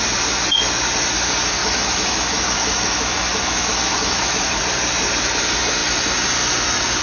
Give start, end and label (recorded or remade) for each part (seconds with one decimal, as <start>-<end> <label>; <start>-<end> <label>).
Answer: 0.0-1.6 recorded; 1.6-4.6 remade; 4.6-7.0 recorded